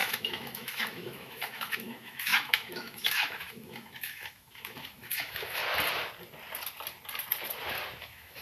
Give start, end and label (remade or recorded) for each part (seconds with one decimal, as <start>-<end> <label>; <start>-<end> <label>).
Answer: 0.0-5.6 remade; 5.6-8.0 recorded; 8.0-8.4 remade